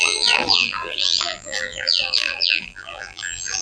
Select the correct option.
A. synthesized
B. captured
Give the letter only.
A